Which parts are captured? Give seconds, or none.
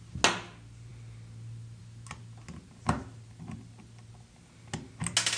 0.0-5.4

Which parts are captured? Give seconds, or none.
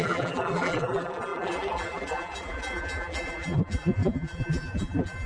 none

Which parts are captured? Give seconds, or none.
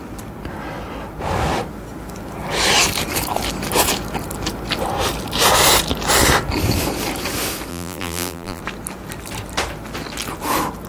0.0-7.7; 8.6-10.9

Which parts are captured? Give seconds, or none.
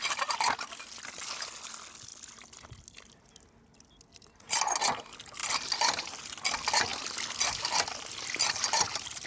0.0-2.1; 2.7-5.4; 6.2-6.9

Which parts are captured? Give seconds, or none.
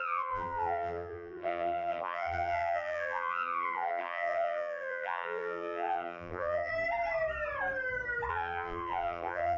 6.7-8.3